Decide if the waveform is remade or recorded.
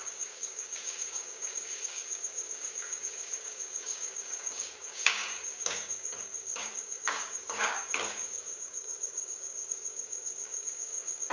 remade